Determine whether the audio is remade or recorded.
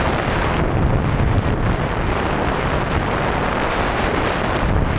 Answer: remade